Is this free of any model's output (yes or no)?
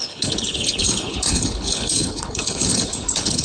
no